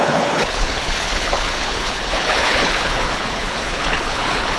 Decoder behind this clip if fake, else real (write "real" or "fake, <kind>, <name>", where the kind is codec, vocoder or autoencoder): fake, codec, HILCodec